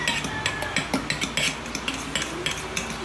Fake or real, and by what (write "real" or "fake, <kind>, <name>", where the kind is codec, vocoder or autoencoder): real